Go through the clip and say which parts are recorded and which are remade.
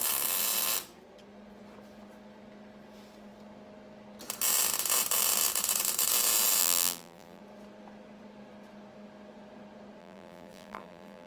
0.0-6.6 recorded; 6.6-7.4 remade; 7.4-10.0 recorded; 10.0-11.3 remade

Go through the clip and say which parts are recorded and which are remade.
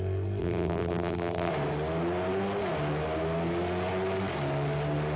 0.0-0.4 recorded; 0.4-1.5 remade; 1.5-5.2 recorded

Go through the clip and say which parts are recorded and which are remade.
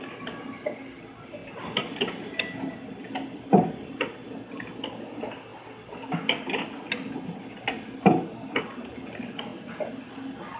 0.0-1.4 recorded; 1.4-3.9 remade; 3.9-10.6 recorded